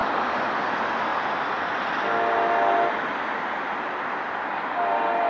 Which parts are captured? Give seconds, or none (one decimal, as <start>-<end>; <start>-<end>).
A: 0.0-5.3